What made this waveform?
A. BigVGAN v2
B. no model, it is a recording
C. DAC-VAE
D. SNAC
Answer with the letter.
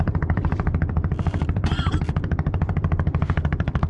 A